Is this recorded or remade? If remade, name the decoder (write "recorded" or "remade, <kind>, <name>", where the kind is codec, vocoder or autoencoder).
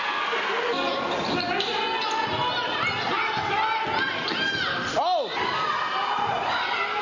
recorded